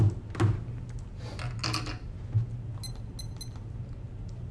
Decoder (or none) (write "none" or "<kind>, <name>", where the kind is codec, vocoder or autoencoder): none